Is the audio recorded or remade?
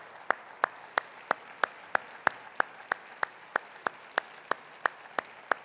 recorded